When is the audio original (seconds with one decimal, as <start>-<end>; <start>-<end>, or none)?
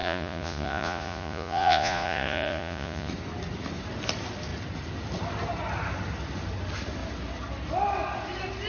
3.1-8.7